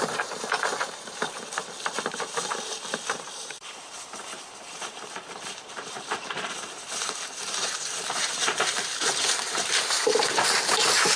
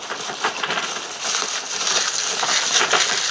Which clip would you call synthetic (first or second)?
first